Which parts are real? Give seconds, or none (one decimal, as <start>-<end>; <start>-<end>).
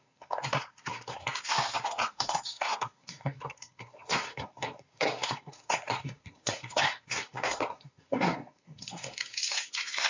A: none